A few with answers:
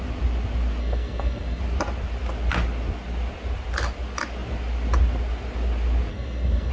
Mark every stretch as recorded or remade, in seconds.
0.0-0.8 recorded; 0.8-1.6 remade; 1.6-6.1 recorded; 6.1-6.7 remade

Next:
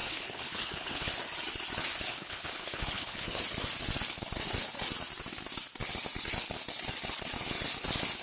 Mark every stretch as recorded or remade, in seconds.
0.0-1.1 remade; 1.1-2.1 recorded; 2.1-3.4 remade; 3.4-8.2 recorded

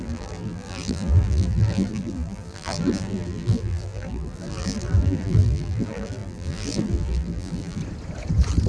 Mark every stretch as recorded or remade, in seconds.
0.0-7.8 remade; 7.8-8.7 recorded

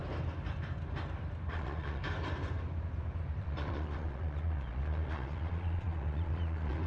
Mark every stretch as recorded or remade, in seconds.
0.0-1.5 recorded; 1.5-2.0 remade; 2.0-3.4 recorded; 3.4-6.9 remade

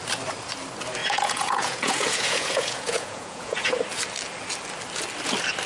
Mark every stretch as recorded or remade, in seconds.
0.0-1.0 recorded; 1.0-3.7 remade; 3.7-5.7 recorded

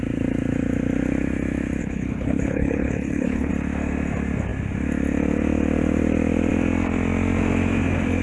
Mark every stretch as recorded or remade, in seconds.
0.0-1.8 recorded; 1.8-3.5 remade; 3.5-8.2 recorded

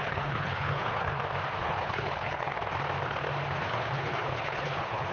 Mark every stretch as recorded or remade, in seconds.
0.0-1.1 remade; 1.1-1.6 recorded; 1.6-2.5 remade; 2.5-3.7 recorded; 3.7-5.1 remade

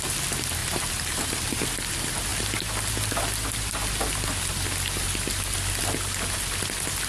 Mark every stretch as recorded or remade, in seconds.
0.0-0.6 recorded; 0.6-1.9 remade; 1.9-7.1 recorded